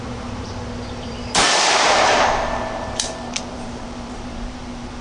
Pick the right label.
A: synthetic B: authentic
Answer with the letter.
A